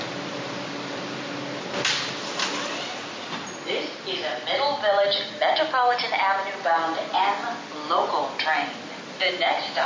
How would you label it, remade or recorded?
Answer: recorded